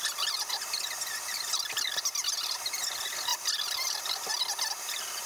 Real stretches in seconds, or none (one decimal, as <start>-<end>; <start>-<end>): 0.0-3.3; 4.3-5.3